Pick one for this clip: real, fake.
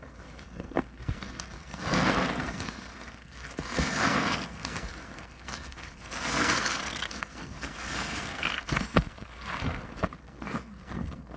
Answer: fake